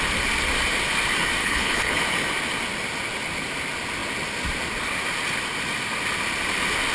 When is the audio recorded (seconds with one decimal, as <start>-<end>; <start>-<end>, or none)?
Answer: 0.0-1.4; 2.0-6.9